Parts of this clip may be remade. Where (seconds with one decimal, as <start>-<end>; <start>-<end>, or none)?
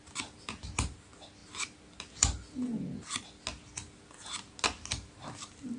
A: none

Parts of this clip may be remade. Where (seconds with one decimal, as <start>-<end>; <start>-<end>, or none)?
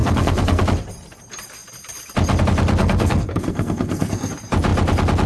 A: 0.0-0.6; 2.8-4.3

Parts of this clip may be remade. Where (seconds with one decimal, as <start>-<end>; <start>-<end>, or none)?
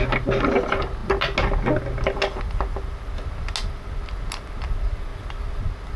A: none